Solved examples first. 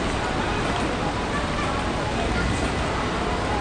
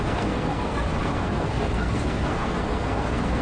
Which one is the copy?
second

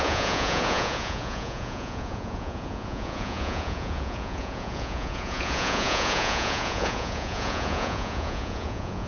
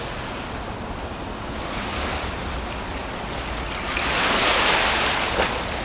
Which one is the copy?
first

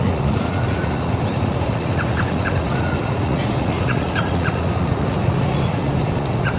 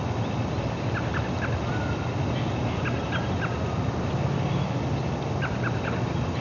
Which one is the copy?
first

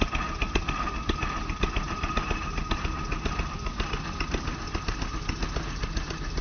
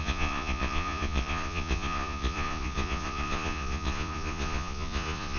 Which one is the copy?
second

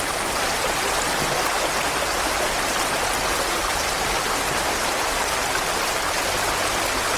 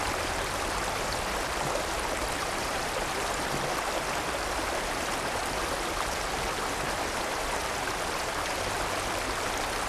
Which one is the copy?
second